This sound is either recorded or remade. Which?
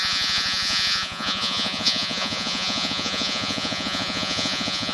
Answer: remade